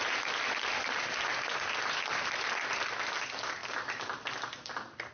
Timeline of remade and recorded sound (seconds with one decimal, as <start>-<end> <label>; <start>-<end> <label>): 0.0-3.6 recorded; 3.6-5.1 remade